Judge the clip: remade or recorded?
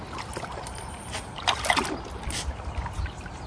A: recorded